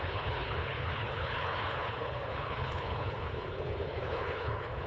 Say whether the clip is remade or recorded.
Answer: remade